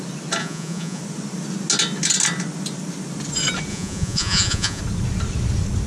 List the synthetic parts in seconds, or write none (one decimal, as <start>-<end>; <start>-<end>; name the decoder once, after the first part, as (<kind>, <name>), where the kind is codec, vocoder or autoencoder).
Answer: 0.4-1.0 (vocoder, Vocos); 3.7-4.8